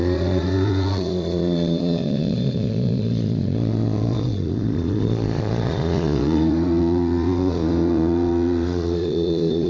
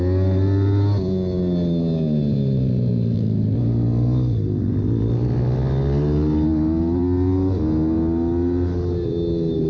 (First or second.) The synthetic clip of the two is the first